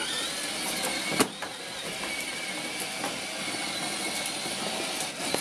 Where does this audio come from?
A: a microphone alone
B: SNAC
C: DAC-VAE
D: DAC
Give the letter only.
A